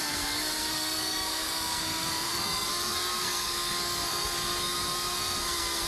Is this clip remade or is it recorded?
remade